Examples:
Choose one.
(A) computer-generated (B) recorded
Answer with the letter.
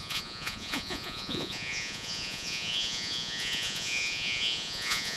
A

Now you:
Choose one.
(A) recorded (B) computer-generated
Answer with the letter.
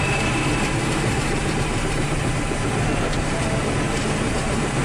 B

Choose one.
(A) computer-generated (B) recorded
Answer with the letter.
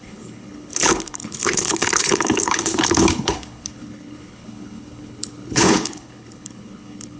A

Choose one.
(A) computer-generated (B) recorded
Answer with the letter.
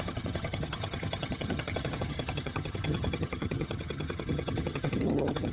A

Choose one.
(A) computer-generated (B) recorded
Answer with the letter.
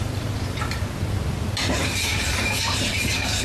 A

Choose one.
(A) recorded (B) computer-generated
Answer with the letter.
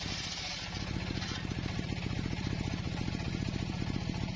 A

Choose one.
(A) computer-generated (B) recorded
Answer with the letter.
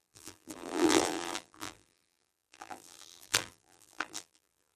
A